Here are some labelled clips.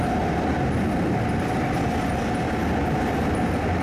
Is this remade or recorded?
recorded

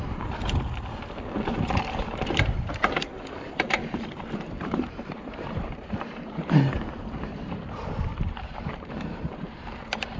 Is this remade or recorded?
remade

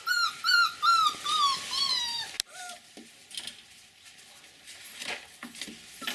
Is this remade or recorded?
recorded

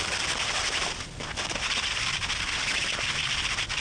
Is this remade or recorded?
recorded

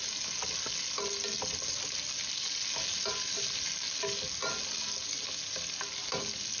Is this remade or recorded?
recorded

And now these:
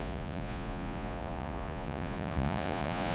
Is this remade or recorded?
remade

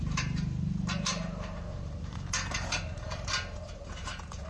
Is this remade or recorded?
remade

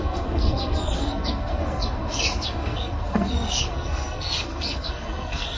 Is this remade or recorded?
remade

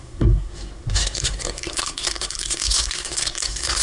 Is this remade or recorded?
remade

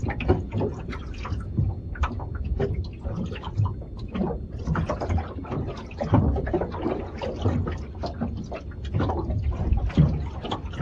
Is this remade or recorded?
recorded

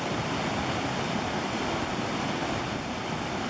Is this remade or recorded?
remade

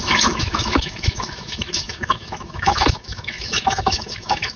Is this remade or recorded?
remade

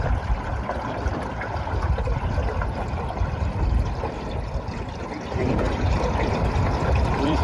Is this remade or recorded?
remade